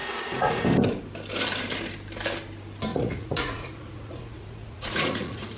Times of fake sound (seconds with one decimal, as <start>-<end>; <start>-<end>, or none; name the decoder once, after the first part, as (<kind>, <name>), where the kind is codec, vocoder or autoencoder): 0.0-0.6 (vocoder, Vocos); 2.9-5.6